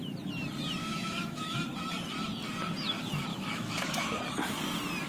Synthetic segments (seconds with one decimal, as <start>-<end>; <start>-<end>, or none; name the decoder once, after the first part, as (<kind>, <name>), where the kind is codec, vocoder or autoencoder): 0.8-1.6 (autoencoder, DAC-VAE); 3.3-4.2